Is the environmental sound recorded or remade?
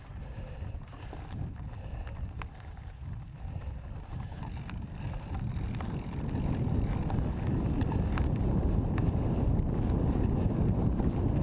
recorded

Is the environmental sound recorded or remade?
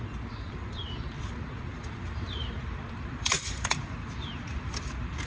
remade